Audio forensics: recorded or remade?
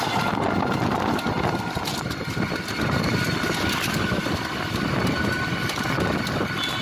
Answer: recorded